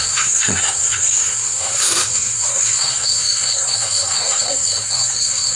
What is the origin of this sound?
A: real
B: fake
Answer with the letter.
B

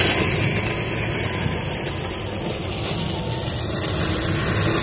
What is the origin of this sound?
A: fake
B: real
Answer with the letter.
B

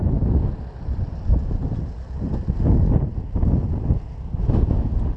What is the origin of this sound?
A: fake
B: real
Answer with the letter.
B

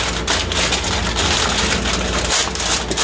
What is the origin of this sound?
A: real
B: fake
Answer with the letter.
A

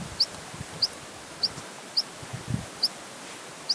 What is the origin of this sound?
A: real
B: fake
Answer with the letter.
A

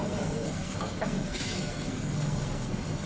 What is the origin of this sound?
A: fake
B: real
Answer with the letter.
A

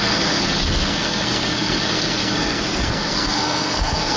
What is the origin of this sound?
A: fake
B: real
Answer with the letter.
A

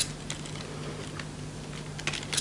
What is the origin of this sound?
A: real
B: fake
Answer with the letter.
A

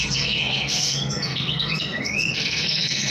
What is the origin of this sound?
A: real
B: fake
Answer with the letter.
B